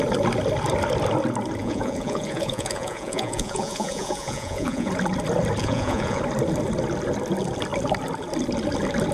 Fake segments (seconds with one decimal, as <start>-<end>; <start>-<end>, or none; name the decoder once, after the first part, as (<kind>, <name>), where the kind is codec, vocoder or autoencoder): 1.6-4.9 (vocoder, Vocos); 5.6-6.2